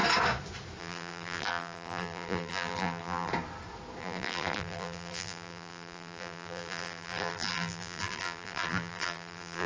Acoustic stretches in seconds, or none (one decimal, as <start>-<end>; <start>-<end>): 0.0-0.8; 3.3-4.0